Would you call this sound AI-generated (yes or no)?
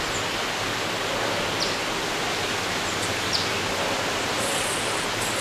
no